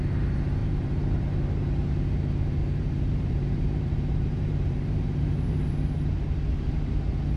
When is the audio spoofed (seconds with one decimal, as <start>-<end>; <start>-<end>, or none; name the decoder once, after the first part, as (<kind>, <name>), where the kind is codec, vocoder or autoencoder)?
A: 0.6-1.2 (vocoder, BigVGAN v2); 2.6-5.7